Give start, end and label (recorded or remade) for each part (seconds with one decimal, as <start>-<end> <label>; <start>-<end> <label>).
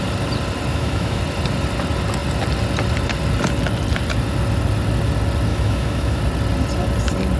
0.0-0.7 recorded; 0.7-1.2 remade; 1.2-5.5 recorded; 5.5-6.2 remade; 6.2-7.4 recorded